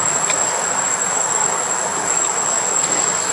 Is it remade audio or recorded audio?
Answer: remade